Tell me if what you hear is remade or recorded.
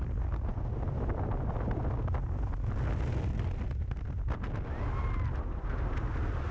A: recorded